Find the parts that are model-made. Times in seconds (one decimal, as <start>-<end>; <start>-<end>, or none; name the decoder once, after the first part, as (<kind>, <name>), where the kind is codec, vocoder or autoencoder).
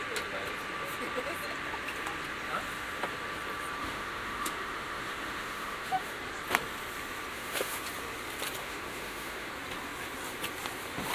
3.8-6.2 (autoencoder, DAC-VAE); 7.3-7.8; 8.6-9.5